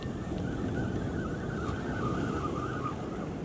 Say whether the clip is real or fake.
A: real